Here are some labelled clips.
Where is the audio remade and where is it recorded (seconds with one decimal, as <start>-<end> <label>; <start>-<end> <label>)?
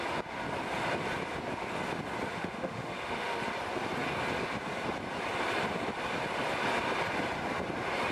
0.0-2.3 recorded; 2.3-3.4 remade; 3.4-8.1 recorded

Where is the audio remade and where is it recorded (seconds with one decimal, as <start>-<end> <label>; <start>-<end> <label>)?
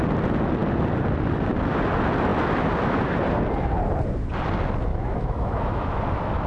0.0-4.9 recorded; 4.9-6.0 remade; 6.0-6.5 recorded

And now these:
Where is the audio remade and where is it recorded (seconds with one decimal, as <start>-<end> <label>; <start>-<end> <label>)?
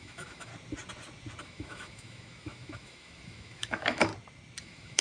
0.0-0.5 remade; 0.5-1.4 recorded; 1.4-4.1 remade; 4.1-4.6 recorded; 4.6-5.0 remade